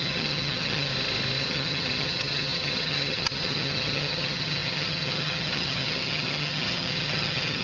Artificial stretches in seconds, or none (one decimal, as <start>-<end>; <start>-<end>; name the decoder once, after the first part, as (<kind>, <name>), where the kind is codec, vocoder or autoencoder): 0.0-0.9 (vocoder, HiFi-GAN); 1.4-7.6

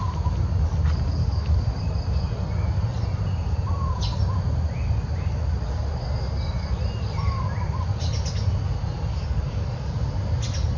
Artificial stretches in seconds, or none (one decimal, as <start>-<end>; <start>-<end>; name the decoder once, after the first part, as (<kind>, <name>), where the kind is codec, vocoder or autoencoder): 1.2-1.8 (codec, DAC); 9.1-9.9

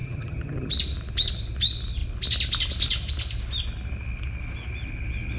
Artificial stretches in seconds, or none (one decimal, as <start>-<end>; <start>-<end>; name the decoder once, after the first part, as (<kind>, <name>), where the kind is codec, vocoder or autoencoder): 0.0-0.7 (vocoder, HiFi-GAN)

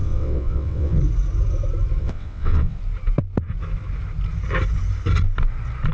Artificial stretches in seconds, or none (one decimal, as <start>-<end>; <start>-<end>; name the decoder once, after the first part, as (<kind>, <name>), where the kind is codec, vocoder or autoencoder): 0.0-1.0 (vocoder, WaveNeXt); 2.0-2.8

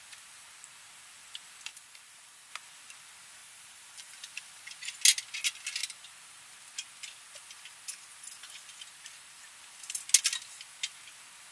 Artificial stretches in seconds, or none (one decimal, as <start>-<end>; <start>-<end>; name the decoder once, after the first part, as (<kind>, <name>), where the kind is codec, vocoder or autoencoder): 1.7-2.5 (vocoder, BigVGAN v2); 3.4-4.3

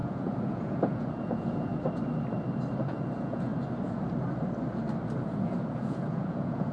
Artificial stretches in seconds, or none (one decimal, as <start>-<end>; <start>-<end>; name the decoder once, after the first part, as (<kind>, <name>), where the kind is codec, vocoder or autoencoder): 0.0-1.7 (vocoder, Vocos); 2.8-3.5; 5.3-6.7